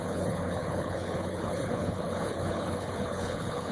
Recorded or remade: remade